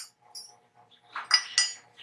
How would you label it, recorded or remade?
recorded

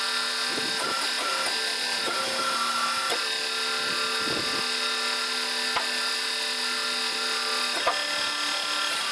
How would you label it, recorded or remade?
recorded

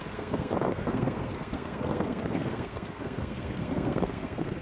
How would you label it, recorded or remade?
remade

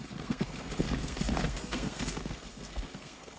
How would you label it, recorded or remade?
remade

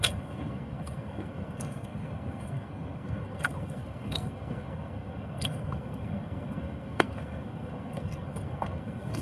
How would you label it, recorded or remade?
remade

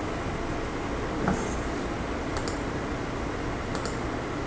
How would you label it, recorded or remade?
recorded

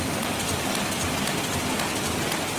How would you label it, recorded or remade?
recorded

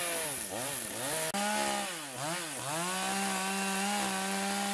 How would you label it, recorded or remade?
recorded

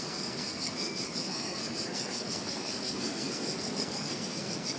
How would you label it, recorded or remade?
remade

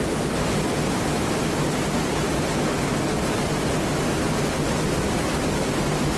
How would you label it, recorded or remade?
recorded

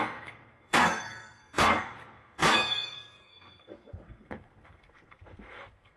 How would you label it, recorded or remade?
remade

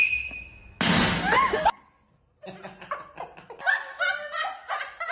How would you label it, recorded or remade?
recorded